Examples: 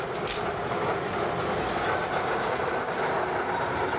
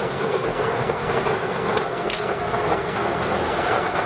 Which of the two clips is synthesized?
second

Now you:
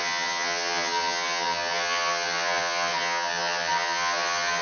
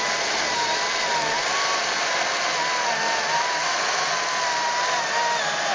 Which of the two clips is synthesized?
first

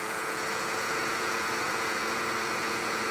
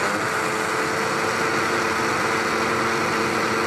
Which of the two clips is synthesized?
first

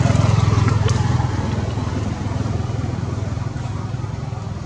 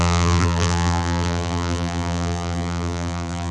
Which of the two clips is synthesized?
second